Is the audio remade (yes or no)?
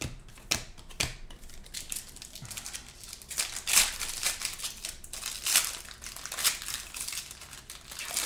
no